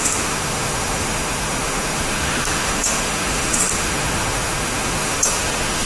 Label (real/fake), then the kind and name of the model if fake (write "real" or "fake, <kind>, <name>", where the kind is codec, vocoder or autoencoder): fake, autoencoder, DAC-VAE